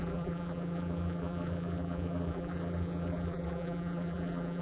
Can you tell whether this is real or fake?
fake